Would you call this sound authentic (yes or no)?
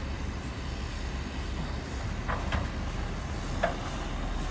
yes